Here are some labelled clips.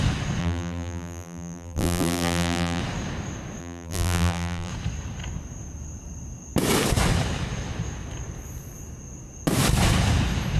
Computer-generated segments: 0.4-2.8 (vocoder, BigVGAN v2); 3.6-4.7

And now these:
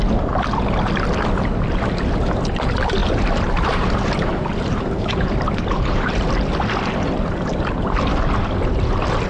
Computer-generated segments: 3.0-6.3 (vocoder, BigVGAN v2)

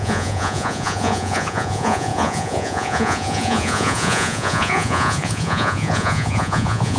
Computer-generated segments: 0.0-7.0 (vocoder, Vocos)

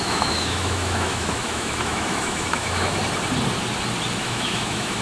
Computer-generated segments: 0.0-3.0 (autoencoder, DAC-VAE); 4.2-5.0